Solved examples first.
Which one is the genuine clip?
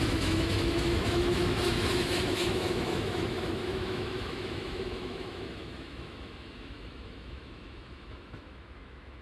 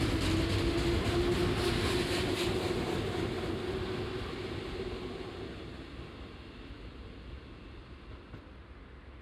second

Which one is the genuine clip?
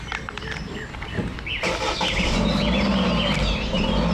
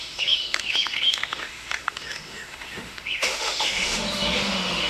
first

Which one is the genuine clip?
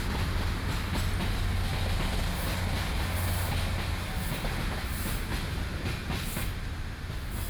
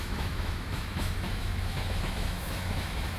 first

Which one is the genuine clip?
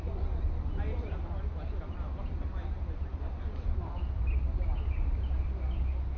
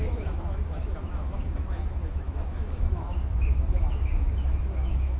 first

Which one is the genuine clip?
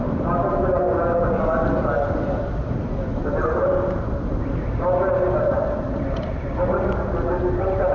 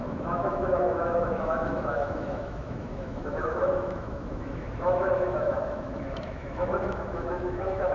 first